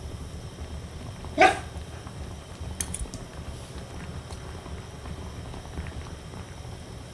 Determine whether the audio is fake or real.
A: real